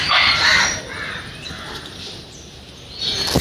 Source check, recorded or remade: recorded